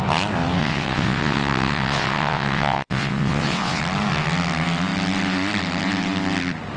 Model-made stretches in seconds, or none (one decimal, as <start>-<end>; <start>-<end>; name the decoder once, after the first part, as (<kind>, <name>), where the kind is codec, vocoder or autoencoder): 0.6-3.8 (vocoder, WaveNeXt)